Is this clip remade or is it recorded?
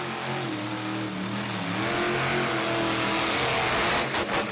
recorded